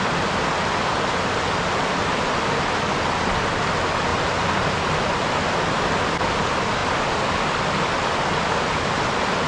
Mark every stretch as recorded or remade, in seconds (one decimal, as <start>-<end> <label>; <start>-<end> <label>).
0.0-4.1 recorded; 4.1-4.7 remade; 4.7-9.5 recorded